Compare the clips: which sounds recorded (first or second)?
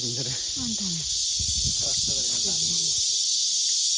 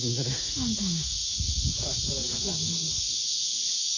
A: first